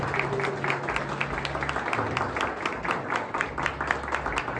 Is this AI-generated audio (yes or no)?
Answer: no